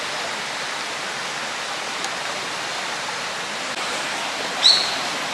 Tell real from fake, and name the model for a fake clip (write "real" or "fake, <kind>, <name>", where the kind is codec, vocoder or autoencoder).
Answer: real